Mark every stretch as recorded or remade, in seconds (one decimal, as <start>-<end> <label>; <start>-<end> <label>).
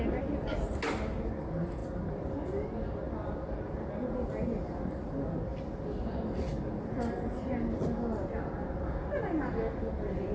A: 0.0-10.3 recorded